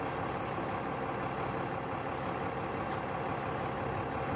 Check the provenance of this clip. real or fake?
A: real